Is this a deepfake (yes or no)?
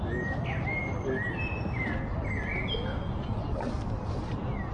no